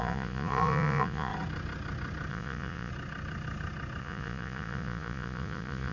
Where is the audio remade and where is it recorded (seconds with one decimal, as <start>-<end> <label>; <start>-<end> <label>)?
0.0-1.3 remade; 1.3-2.3 recorded; 2.3-2.9 remade; 2.9-4.0 recorded; 4.0-5.9 remade